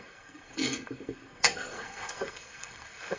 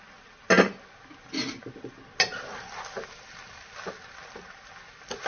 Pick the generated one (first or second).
first